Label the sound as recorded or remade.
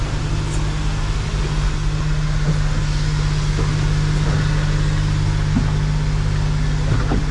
recorded